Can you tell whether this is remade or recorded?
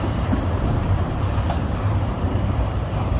remade